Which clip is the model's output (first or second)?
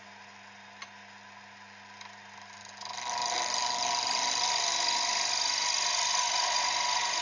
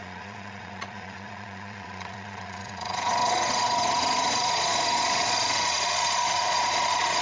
second